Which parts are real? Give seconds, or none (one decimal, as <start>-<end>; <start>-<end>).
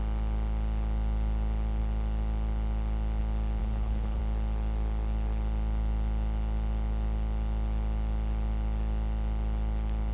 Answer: 0.0-3.6; 4.2-10.1